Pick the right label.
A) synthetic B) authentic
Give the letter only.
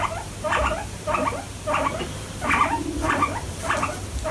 B